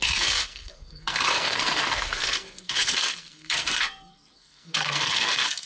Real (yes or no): no